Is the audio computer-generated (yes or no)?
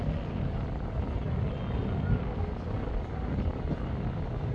no